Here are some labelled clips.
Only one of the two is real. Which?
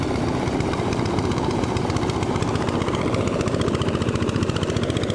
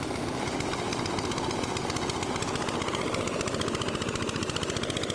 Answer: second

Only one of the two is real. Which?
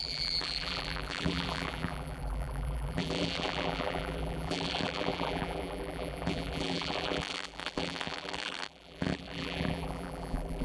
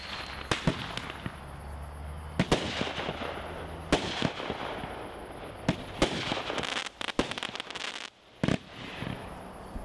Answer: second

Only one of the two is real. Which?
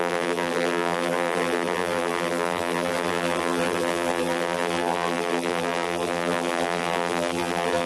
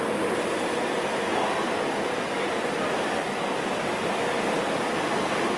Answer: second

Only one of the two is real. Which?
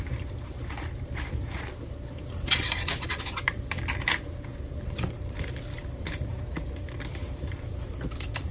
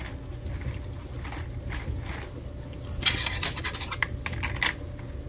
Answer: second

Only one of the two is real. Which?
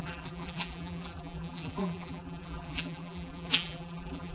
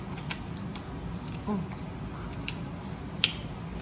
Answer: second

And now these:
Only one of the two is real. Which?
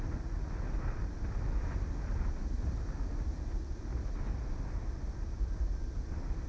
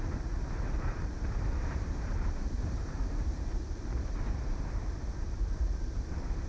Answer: first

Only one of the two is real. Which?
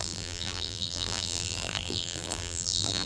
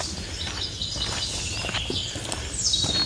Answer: second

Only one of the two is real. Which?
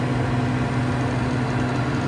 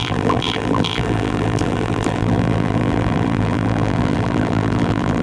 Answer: first